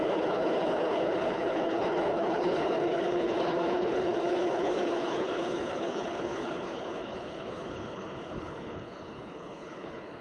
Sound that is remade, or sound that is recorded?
remade